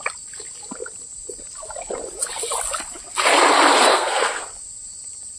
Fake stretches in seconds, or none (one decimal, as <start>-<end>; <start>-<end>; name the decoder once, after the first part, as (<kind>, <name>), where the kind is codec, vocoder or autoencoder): 3.9-4.4 (codec, SNAC)